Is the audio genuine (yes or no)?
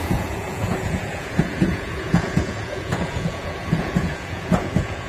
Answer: no